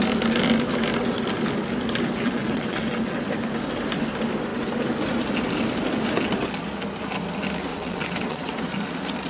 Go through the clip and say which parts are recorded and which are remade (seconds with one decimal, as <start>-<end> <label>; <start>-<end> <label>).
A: 0.0-2.4 recorded; 2.4-3.2 remade; 3.2-7.7 recorded; 7.7-8.6 remade; 8.6-9.3 recorded